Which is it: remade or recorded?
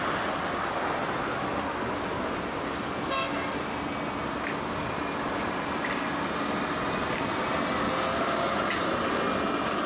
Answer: recorded